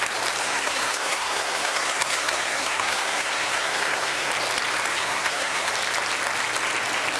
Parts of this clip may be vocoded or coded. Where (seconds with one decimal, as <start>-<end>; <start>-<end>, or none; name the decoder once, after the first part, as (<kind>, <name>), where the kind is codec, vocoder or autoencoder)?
0.4-4.3 (codec, SNAC); 4.9-5.7